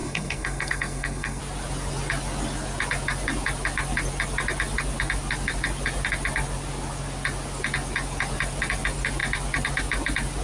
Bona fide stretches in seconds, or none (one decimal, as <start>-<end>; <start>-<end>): 1.4-10.4